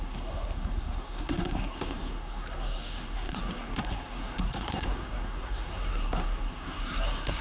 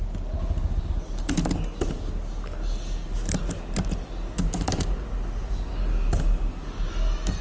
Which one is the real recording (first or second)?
second